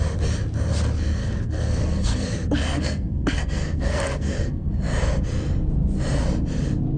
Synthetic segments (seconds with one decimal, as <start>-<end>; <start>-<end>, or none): 1.2-4.7